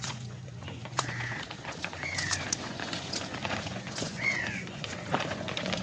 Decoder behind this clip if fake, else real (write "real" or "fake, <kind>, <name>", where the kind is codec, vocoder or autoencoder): fake, vocoder, Vocos